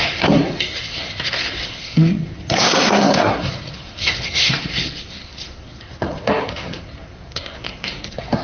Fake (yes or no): yes